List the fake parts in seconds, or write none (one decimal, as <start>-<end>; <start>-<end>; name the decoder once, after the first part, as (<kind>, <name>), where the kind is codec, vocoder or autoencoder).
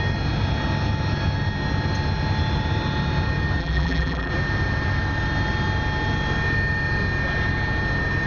3.6-4.3 (vocoder, BigVGAN v2)